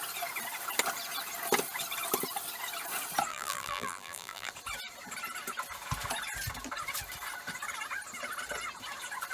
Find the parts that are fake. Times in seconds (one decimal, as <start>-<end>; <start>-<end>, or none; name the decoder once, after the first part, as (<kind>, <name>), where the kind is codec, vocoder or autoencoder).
3.3-4.5 (vocoder, BigVGAN v2)